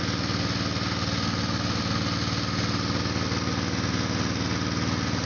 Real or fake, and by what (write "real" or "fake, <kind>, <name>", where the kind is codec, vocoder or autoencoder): real